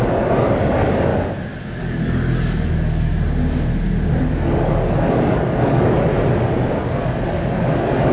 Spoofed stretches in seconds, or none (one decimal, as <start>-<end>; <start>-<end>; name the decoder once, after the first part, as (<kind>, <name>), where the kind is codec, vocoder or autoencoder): 0.0-1.1 (codec, DAC); 1.8-3.1; 4.2-6.1; 6.7-8.1